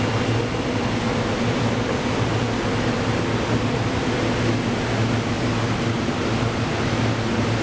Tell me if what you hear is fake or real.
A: real